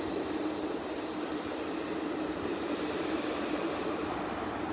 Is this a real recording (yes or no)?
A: no